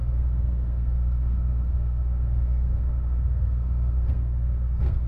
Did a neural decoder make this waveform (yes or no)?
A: yes